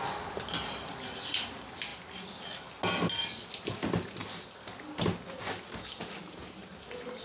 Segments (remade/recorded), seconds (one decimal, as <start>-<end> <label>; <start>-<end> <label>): 0.0-7.2 recorded